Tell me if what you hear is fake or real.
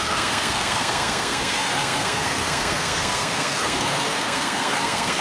fake